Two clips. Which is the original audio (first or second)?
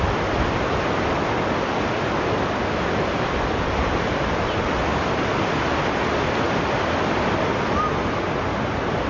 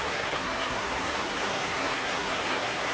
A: first